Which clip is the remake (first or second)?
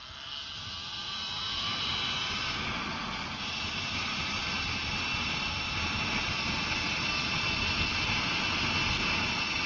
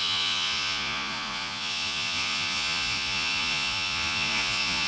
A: second